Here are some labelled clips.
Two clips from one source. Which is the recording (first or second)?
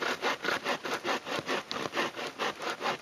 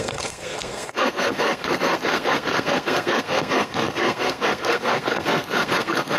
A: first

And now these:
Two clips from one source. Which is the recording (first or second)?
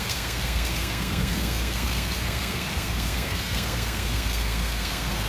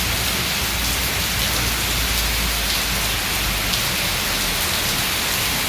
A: second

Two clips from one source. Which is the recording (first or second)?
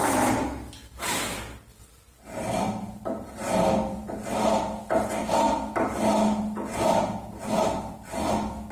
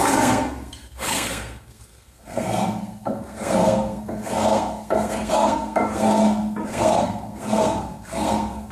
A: first